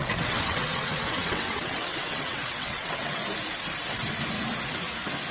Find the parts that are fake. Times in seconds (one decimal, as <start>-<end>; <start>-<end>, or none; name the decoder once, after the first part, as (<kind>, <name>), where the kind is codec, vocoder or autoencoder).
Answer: 0.0-3.2 (vocoder, WaveNeXt)